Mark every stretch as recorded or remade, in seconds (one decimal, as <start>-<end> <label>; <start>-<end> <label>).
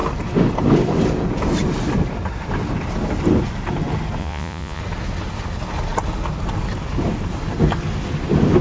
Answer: 0.0-4.2 recorded; 4.2-4.8 remade; 4.8-8.6 recorded